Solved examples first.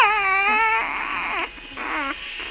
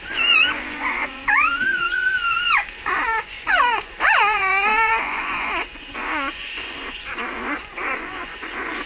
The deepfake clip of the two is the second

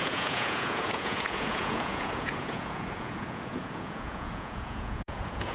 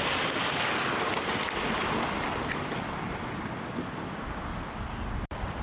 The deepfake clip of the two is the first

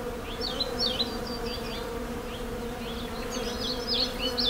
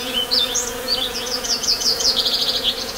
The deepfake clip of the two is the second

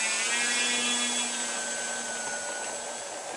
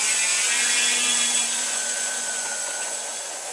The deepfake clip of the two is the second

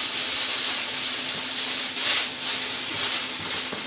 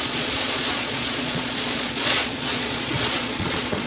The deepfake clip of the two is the second